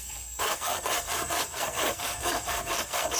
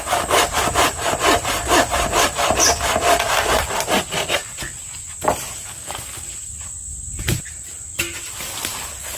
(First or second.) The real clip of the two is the second